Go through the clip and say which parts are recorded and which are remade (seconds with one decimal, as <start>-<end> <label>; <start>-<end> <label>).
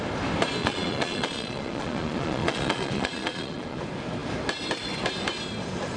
0.0-0.6 recorded; 0.6-3.8 remade; 3.8-6.0 recorded